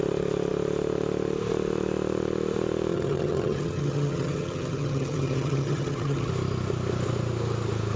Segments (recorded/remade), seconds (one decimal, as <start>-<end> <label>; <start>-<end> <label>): 0.0-2.9 recorded; 2.9-6.3 remade; 6.3-8.0 recorded